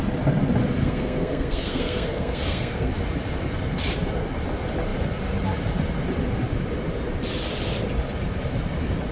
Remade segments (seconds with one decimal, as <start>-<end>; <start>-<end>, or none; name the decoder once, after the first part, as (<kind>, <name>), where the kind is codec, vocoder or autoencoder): 0.8-2.9 (codec, SNAC)